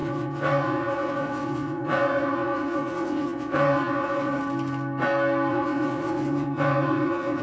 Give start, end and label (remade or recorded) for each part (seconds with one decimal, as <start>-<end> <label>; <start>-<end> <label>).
0.0-4.4 remade; 4.4-5.5 recorded; 5.5-7.4 remade